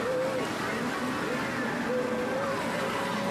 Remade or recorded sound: recorded